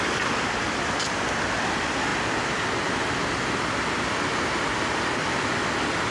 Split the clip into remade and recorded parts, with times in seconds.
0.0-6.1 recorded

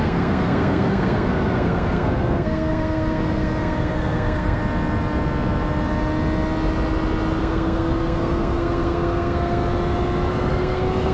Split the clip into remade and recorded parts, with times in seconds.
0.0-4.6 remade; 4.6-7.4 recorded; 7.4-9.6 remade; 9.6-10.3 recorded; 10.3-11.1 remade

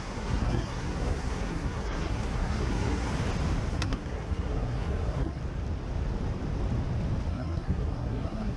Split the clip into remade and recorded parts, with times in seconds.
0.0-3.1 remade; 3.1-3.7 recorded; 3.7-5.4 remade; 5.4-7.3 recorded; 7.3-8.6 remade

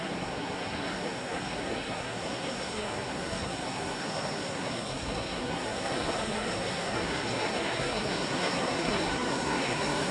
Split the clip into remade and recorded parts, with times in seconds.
0.0-10.1 remade

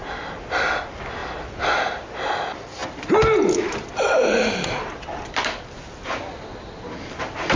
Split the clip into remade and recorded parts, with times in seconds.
0.0-7.6 recorded

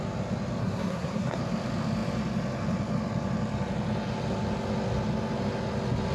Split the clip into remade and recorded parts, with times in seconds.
0.0-0.6 recorded; 0.6-1.4 remade; 1.4-6.1 recorded